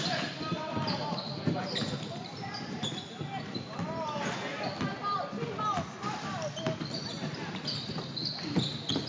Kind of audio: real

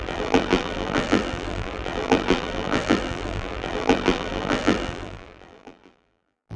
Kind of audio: fake